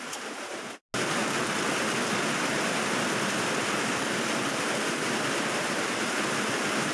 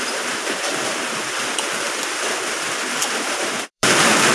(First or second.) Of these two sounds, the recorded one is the first